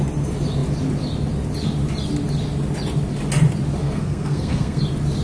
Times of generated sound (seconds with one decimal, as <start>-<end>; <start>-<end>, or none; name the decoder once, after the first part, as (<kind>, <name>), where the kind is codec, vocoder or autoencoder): 3.8-4.8 (codec, SNAC)